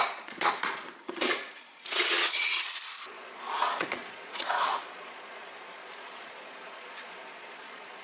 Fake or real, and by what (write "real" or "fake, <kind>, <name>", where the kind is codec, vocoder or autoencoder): fake, vocoder, Vocos